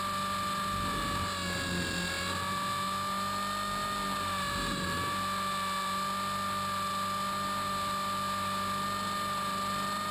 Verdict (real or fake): real